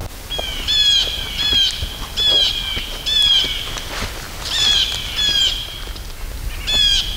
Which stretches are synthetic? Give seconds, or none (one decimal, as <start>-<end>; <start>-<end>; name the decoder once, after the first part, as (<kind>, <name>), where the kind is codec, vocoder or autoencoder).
none